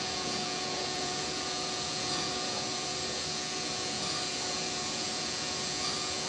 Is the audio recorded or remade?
remade